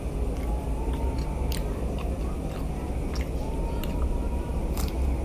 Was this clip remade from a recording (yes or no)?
no